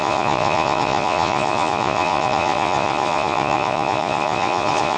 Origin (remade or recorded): remade